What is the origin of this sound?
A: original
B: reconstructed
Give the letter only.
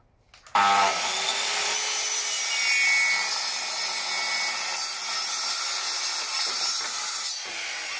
A